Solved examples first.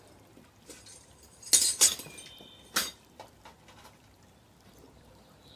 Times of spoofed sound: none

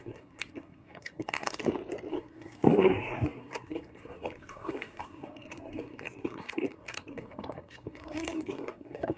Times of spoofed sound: 0.0-1.6 (codec, SNAC); 2.1-9.2

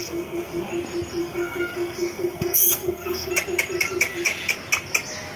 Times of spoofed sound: 0.0-0.7 (codec, SNAC); 1.2-3.3